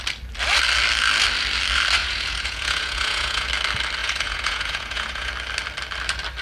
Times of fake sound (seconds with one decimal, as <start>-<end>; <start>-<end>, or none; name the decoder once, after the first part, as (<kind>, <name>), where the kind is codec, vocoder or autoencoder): 2.0-3.5 (vocoder, Vocos); 4.0-5.3